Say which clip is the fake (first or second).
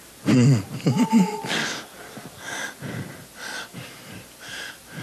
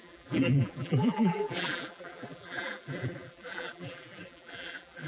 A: second